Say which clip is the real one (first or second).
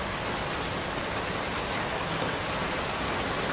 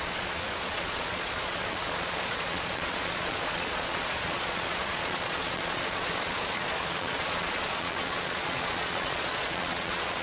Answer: first